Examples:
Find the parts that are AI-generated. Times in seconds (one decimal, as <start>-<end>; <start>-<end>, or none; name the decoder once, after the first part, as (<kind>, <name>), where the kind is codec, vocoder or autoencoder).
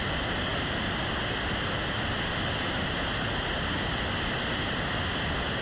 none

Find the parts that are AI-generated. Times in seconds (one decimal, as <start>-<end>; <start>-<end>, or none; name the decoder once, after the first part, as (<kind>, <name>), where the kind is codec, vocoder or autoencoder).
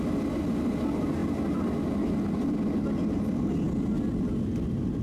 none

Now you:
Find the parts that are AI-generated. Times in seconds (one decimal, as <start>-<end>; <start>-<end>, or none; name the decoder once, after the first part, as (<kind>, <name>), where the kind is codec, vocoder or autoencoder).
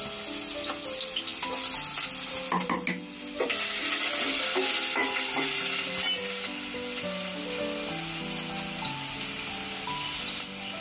none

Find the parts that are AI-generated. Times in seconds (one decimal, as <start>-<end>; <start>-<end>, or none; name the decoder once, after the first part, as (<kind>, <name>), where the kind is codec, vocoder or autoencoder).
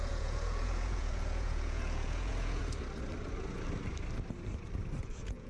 0.0-2.6 (vocoder, Vocos); 5.0-5.5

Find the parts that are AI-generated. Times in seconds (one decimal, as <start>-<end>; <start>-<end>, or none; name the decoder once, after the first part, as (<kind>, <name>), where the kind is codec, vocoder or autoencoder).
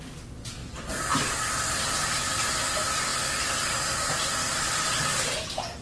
none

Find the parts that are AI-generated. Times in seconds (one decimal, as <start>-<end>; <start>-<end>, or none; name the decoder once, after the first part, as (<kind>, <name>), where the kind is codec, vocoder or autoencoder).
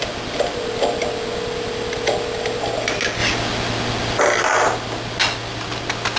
none